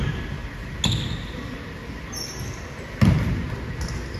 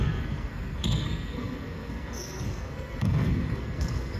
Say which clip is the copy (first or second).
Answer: second